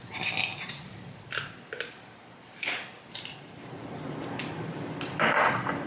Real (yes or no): no